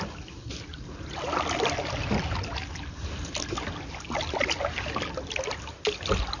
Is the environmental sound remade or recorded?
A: recorded